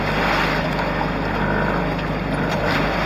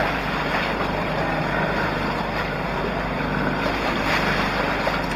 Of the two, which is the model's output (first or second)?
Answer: second